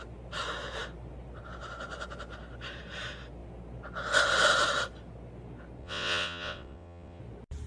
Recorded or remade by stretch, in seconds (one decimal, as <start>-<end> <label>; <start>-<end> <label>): 0.0-5.8 recorded; 5.8-7.2 remade; 7.2-7.7 recorded